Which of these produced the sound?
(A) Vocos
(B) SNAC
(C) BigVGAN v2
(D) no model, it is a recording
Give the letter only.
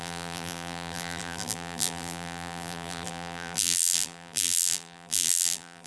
C